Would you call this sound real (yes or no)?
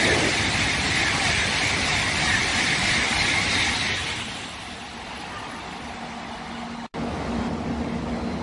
yes